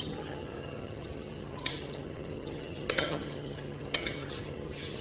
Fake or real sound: fake